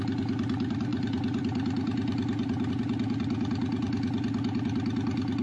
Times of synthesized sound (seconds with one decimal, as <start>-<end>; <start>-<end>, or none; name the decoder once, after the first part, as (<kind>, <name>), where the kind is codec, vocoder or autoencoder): 0.0-5.4 (vocoder, BigVGAN v2)